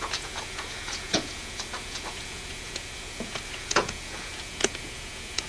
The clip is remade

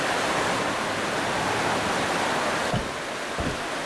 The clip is recorded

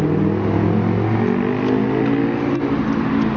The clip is recorded